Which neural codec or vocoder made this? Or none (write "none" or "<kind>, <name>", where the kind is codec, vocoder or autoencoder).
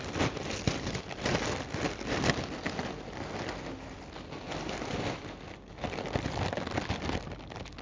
none